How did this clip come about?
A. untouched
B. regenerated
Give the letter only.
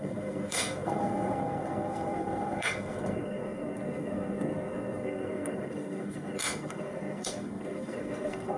B